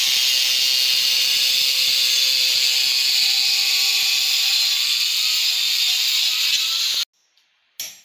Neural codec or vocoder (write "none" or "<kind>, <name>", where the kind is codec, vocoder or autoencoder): none